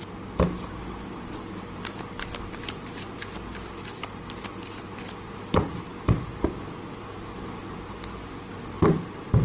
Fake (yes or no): no